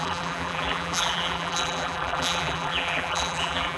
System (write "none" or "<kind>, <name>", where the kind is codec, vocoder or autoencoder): vocoder, BigVGAN v2